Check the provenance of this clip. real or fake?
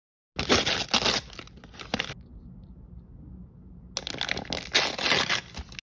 real